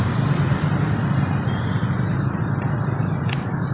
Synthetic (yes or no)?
no